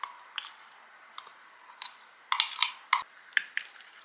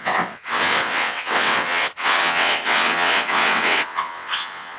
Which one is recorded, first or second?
first